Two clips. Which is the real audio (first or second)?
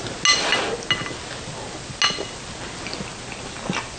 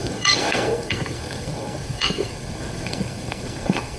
first